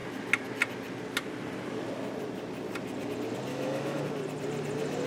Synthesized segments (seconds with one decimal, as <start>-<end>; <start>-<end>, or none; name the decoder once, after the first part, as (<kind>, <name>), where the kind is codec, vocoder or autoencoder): 3.5-4.0 (autoencoder, DAC-VAE)